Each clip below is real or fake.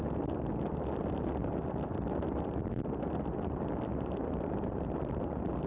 real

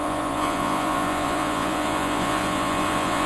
fake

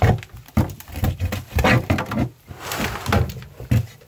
real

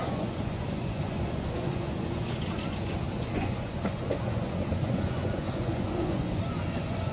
fake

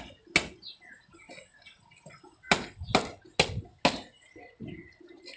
real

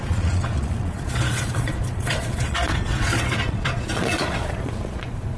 fake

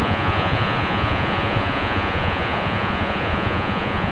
fake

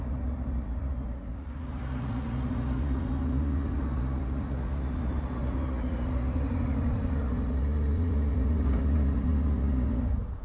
fake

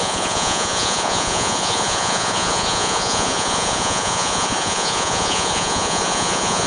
fake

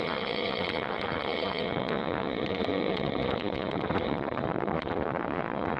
fake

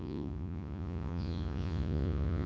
fake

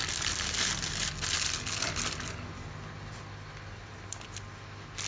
real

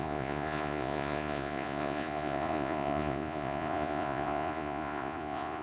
fake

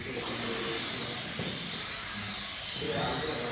real